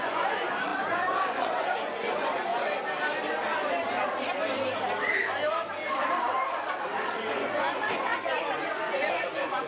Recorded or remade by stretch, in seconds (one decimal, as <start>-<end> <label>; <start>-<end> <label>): 0.0-2.5 remade; 2.5-7.3 recorded; 7.3-9.7 remade